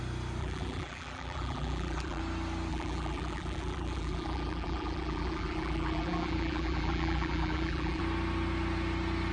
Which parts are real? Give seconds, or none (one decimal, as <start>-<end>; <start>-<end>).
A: 0.0-0.4; 2.2-2.7; 8.0-9.3